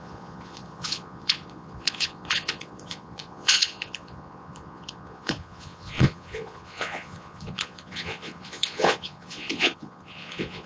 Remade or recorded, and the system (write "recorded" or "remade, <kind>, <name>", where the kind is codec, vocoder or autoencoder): remade, vocoder, Vocos